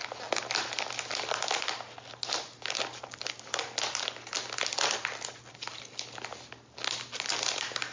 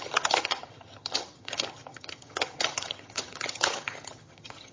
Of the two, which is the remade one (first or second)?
second